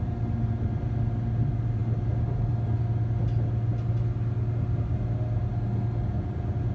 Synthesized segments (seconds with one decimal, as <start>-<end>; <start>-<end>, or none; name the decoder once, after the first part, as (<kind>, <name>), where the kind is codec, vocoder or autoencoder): none